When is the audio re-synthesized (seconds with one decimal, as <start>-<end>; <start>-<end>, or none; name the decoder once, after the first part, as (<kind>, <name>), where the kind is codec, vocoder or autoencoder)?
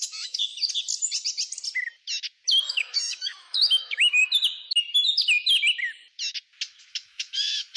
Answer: 0.0-0.5 (autoencoder, DAC-VAE); 2.7-4.2; 6.9-7.8